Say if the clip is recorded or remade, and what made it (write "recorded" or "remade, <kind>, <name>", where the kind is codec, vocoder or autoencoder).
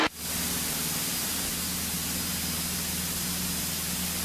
recorded